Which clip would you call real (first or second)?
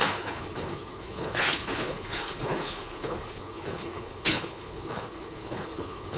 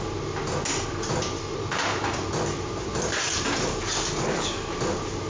second